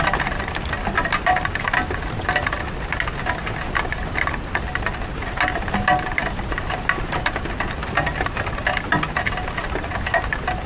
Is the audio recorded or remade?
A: recorded